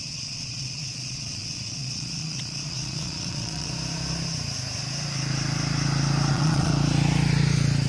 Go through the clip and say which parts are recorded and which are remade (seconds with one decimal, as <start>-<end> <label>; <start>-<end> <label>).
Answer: 0.0-3.7 remade; 3.7-6.3 recorded; 6.3-6.7 remade; 6.7-7.9 recorded